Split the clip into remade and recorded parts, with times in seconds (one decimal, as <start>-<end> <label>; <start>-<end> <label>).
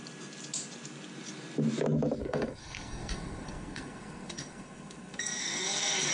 0.0-2.2 recorded; 2.2-6.1 remade